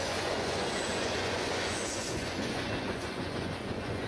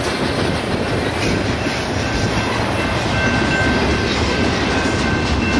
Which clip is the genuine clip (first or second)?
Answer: second